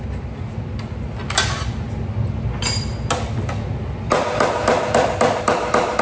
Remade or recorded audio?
recorded